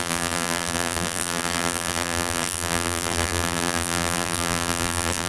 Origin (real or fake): fake